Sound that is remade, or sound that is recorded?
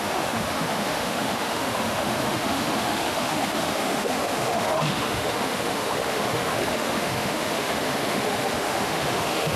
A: remade